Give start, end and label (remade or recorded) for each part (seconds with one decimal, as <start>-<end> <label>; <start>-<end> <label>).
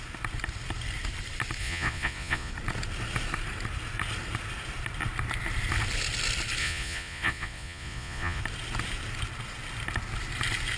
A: 0.0-1.6 recorded; 1.6-2.5 remade; 2.5-6.6 recorded; 6.6-8.4 remade; 8.4-10.8 recorded